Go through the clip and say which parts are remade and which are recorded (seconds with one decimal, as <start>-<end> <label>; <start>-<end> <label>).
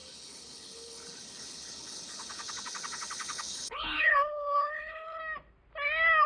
0.0-5.2 remade; 5.2-6.3 recorded